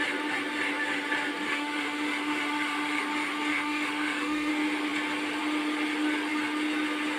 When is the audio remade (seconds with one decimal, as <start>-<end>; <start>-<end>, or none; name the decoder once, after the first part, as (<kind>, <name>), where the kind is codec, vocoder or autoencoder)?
1.5-3.0 (autoencoder, DAC-VAE); 3.5-4.5